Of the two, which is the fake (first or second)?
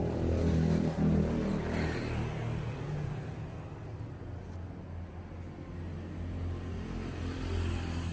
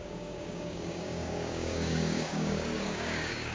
second